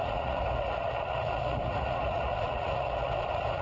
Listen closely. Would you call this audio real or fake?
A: fake